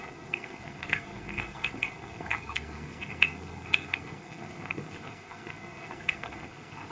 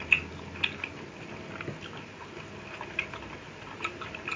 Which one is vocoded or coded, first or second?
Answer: first